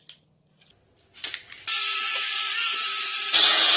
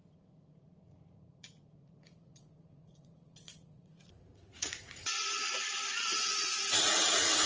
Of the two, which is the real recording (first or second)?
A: first